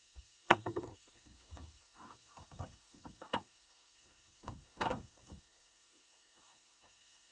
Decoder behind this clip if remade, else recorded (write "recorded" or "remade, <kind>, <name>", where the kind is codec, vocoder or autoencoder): remade, codec, SNAC